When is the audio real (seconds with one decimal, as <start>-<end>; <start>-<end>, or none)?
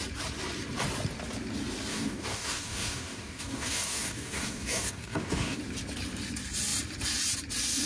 0.0-1.9; 5.6-7.9